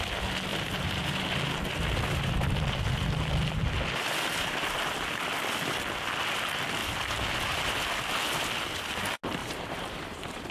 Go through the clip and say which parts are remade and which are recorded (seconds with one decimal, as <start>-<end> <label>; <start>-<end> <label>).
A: 0.0-0.5 recorded; 0.5-1.1 remade; 1.1-9.4 recorded; 9.4-10.5 remade